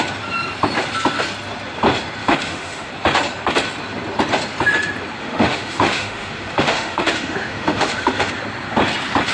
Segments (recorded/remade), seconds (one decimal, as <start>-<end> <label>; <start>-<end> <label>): 0.0-2.2 recorded; 2.2-2.9 remade; 2.9-5.2 recorded; 5.2-8.3 remade; 8.3-9.3 recorded